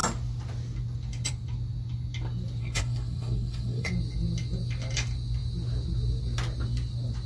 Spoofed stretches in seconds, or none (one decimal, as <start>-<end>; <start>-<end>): 2.6-3.9